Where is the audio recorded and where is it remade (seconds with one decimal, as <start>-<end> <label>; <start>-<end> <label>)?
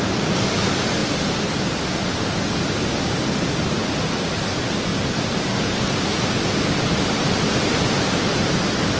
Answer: 0.0-4.9 recorded; 4.9-6.4 remade; 6.4-9.0 recorded